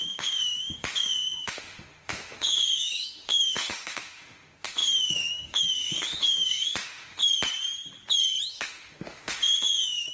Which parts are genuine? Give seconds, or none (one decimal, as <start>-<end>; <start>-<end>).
7.2-8.5